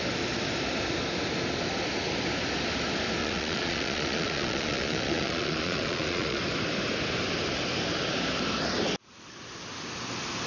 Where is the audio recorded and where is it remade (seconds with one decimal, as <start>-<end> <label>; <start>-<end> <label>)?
0.0-3.2 recorded; 3.2-6.4 remade; 6.4-10.5 recorded

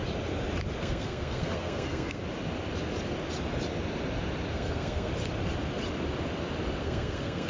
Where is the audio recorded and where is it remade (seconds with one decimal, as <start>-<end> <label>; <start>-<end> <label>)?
0.0-0.8 recorded; 0.8-2.2 remade; 2.2-4.5 recorded; 4.5-5.1 remade; 5.1-6.8 recorded; 6.8-7.5 remade